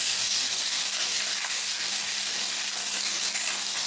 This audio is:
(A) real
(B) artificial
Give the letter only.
B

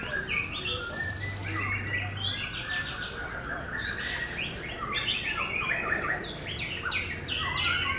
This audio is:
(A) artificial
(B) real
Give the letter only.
B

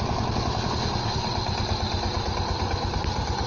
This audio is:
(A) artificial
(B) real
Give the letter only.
B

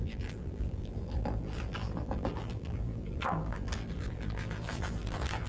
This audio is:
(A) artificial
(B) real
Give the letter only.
A